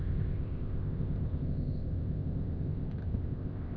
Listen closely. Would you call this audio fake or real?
fake